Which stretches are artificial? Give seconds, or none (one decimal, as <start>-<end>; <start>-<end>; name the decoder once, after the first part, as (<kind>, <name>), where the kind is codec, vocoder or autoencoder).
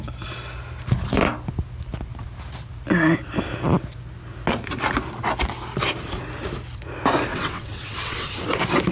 7.3-8.5 (vocoder, WaveNeXt)